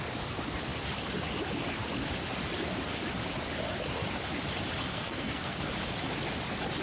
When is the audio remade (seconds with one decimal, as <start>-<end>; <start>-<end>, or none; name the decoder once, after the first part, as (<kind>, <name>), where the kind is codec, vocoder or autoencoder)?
4.9-5.6 (codec, SNAC)